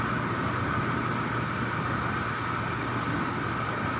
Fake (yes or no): no